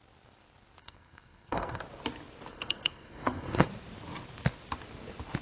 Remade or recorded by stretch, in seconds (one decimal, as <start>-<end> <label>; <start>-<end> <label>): 0.0-0.8 recorded; 0.8-1.8 remade; 1.8-2.5 recorded; 2.5-3.7 remade; 3.7-5.4 recorded